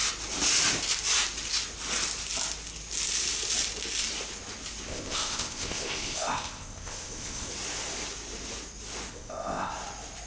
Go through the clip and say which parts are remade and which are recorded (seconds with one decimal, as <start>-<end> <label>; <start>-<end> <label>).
0.0-4.9 recorded; 4.9-7.5 remade; 7.5-9.1 recorded; 9.1-9.7 remade; 9.7-10.3 recorded